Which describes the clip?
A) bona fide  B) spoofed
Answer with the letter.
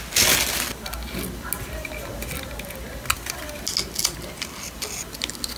A